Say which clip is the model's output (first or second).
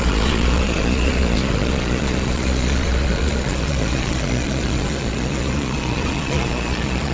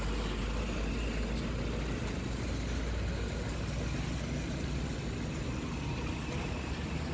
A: first